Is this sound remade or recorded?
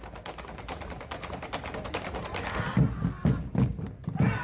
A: recorded